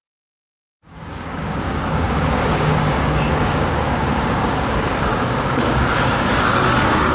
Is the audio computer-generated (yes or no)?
yes